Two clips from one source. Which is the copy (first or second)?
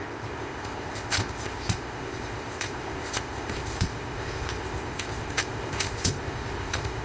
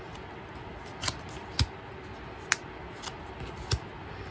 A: first